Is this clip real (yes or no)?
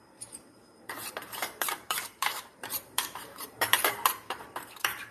no